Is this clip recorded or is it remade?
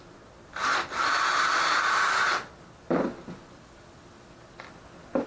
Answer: recorded